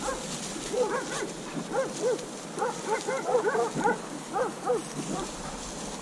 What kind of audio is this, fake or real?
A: real